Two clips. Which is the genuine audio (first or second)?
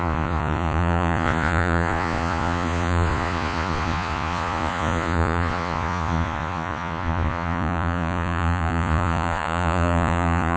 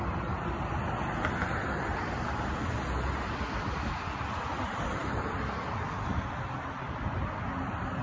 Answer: second